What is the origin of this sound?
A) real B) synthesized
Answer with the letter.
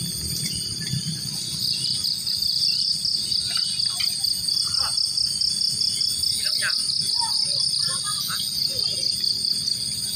A